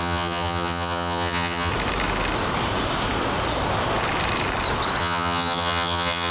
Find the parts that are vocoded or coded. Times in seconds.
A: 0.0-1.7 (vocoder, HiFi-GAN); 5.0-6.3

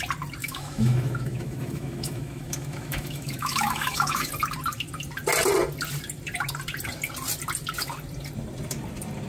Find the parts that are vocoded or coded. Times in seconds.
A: 0.4-4.3 (autoencoder, DAC-VAE)

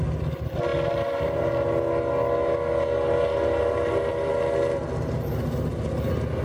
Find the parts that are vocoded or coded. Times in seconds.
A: none